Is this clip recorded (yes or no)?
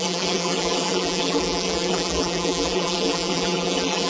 no